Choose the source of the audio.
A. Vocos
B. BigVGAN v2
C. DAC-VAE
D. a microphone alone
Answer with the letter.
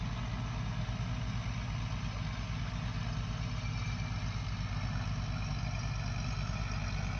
D